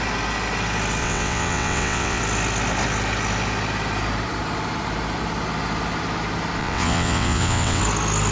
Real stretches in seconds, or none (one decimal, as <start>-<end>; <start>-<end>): 0.0-1.0; 2.2-6.6; 7.8-8.3